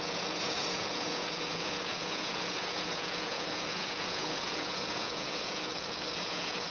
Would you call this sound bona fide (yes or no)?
no